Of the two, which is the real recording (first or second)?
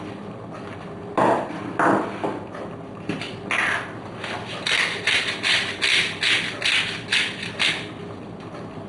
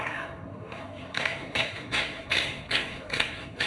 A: first